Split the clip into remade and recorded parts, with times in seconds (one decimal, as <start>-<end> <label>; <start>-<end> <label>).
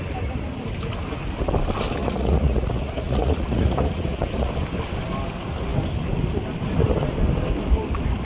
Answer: 0.0-2.0 recorded; 2.0-4.5 remade; 4.5-8.2 recorded